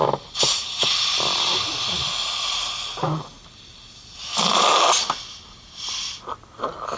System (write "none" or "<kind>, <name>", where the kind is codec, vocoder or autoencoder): none